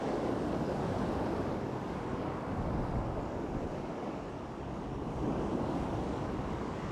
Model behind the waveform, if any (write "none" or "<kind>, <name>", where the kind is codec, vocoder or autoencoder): codec, DAC